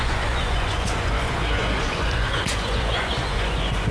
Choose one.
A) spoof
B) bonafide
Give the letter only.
A